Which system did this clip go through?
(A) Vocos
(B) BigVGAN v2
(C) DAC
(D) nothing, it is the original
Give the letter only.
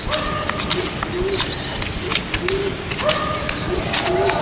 D